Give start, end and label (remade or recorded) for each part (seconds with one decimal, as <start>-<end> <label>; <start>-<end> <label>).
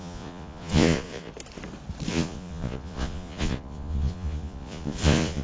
0.0-1.3 remade; 1.3-2.1 recorded; 2.1-5.4 remade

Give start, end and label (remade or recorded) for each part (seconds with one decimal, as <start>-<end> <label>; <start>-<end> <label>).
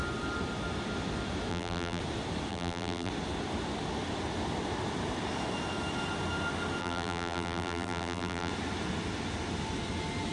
0.0-1.5 recorded; 1.5-2.0 remade; 2.0-2.5 recorded; 2.5-3.1 remade; 3.1-6.8 recorded; 6.8-8.5 remade; 8.5-10.3 recorded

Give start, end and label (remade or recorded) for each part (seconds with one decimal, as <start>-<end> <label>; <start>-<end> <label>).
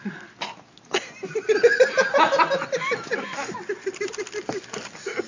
0.0-5.3 recorded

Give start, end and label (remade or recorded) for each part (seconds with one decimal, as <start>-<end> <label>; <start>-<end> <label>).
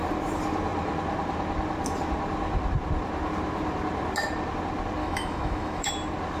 0.0-5.0 recorded; 5.0-5.9 remade; 5.9-6.4 recorded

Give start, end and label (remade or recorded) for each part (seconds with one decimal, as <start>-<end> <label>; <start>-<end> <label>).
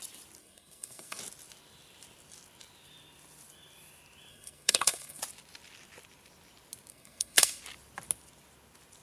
0.0-0.4 recorded; 0.4-1.2 remade; 1.2-4.3 recorded; 4.3-5.2 remade; 5.2-6.9 recorded; 6.9-7.6 remade; 7.6-9.0 recorded